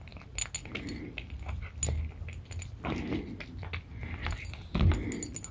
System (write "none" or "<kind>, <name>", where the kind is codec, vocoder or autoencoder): none